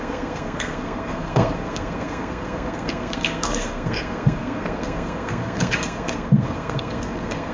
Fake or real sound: fake